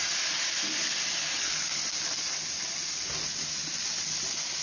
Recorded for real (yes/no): yes